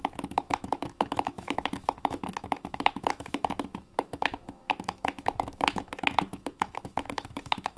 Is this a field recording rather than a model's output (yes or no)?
no